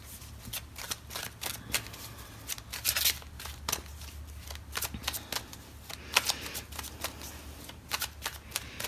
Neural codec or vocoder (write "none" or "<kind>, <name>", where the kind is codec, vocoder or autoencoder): none